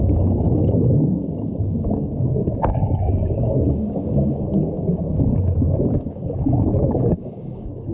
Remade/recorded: remade